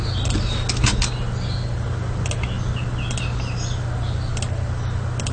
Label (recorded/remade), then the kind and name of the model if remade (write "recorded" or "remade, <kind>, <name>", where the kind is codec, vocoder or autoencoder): recorded